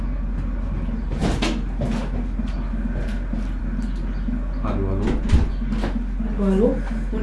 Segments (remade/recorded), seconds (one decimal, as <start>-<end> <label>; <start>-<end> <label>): 0.0-7.2 recorded